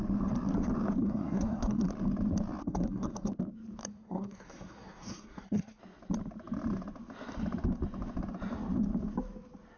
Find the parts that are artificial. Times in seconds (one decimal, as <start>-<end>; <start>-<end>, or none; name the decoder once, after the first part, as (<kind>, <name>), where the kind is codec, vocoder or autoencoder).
1.0-1.9 (codec, SNAC); 2.6-3.3; 3.8-5.8